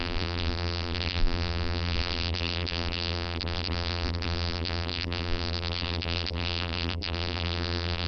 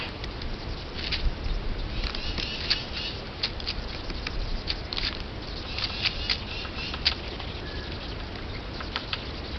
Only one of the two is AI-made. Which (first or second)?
first